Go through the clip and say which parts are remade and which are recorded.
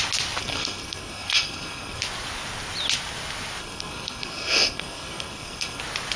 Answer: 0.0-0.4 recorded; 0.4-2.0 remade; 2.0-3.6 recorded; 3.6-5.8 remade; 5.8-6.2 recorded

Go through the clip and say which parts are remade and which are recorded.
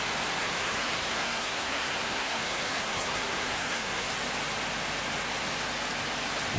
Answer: 0.0-0.4 recorded; 0.4-4.1 remade; 4.1-6.6 recorded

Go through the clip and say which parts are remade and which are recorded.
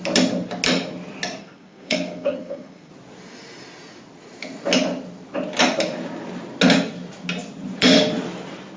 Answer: 0.0-1.4 recorded; 1.4-2.9 remade; 2.9-8.8 recorded